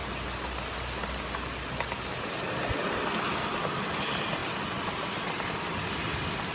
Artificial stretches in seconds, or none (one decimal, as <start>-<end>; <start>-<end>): none